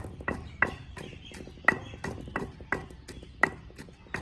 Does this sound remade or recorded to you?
recorded